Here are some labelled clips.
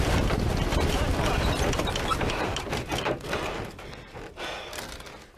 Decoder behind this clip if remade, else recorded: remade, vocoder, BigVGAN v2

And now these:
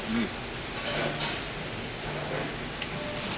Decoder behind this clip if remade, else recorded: recorded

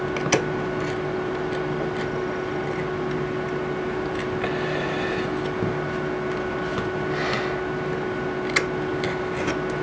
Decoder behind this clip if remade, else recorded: recorded